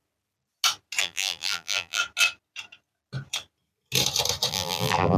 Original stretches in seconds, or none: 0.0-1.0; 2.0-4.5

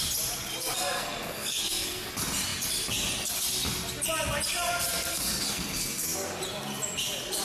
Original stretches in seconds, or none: 0.0-0.6; 2.1-5.1; 6.4-7.4

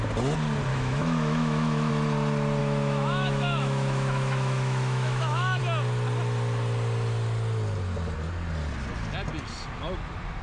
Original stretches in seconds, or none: 0.0-0.7; 1.9-2.6; 5.6-10.4

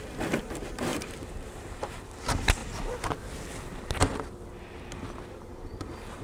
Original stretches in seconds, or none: 2.6-5.5

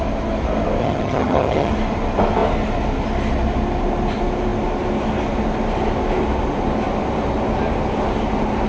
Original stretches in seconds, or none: 0.0-0.8; 1.7-8.7